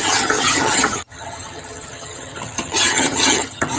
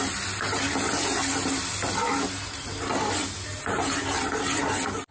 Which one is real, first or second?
second